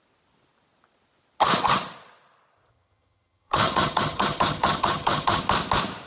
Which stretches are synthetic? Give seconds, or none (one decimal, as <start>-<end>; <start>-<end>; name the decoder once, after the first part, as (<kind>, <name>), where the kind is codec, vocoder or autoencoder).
2.7-5.4 (vocoder, HiFi-GAN)